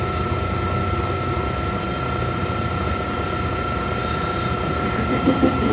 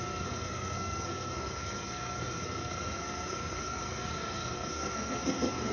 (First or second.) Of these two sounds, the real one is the first